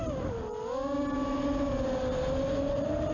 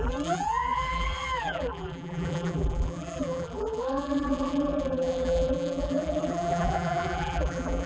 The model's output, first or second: second